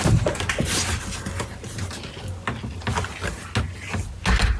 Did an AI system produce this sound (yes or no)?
no